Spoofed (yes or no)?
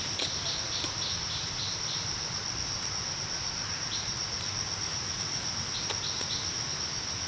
no